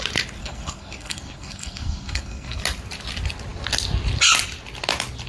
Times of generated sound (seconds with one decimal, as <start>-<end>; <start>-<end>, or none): 0.4-2.6